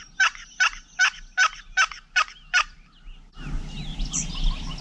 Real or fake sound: real